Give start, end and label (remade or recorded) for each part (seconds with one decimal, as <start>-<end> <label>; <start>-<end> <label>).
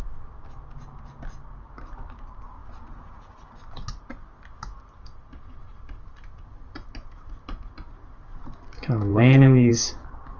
0.0-9.1 recorded; 9.1-9.7 remade; 9.7-10.4 recorded